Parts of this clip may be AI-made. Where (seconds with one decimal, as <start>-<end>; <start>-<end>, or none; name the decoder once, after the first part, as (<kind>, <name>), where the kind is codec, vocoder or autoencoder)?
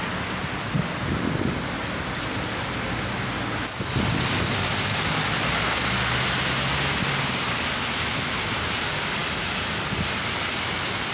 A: none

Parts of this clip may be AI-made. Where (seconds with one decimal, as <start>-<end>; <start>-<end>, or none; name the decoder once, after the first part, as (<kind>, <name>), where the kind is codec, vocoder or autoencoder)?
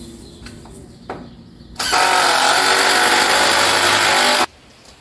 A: none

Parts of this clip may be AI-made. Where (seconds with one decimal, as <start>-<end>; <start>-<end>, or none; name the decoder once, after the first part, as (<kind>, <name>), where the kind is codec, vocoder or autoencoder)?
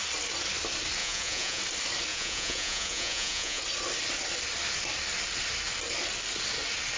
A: 1.0-1.6 (vocoder, Vocos); 2.1-3.6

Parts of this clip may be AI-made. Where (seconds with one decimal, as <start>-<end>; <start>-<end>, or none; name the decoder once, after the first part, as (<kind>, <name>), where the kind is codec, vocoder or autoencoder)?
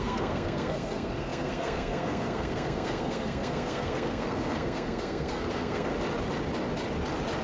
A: 0.0-5.9 (codec, SNAC)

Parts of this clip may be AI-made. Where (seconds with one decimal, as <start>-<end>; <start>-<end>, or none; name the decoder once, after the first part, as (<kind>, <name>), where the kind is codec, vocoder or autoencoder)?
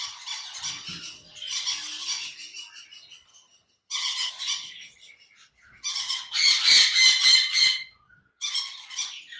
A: 3.3-4.3 (vocoder, HiFi-GAN)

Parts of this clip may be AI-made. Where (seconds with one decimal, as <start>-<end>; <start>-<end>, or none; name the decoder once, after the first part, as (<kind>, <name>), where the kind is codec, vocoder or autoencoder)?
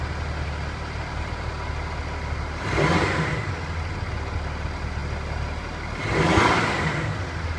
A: none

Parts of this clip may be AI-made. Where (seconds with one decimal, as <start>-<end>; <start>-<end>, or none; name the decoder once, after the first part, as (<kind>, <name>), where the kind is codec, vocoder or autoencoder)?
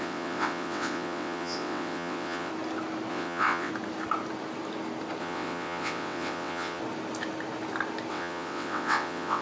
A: 0.0-2.5 (vocoder, WaveNeXt); 3.1-3.7; 5.2-6.8; 8.1-9.4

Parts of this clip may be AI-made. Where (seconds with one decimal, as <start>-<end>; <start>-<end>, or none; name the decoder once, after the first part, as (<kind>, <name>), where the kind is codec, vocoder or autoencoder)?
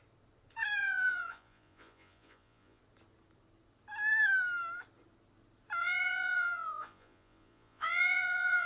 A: 0.8-2.8 (vocoder, Vocos); 5.8-8.7